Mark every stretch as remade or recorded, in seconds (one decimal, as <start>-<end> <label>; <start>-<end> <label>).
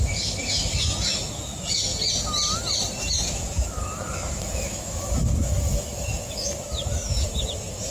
0.0-1.9 remade; 1.9-3.1 recorded; 3.1-7.9 remade